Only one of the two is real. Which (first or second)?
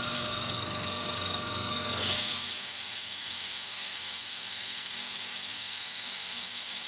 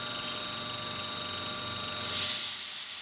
second